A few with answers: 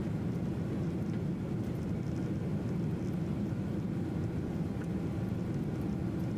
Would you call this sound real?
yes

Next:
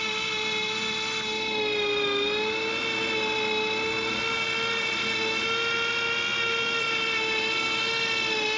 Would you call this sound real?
yes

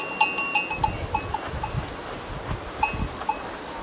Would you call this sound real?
yes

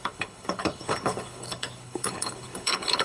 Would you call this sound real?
no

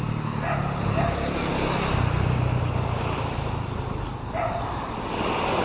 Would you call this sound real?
yes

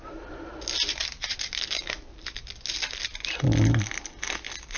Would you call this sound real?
yes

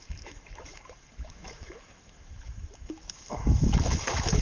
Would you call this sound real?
no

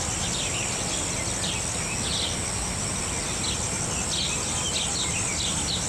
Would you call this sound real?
yes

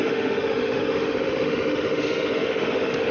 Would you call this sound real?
no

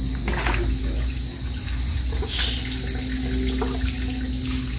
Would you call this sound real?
yes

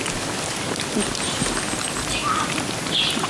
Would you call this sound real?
yes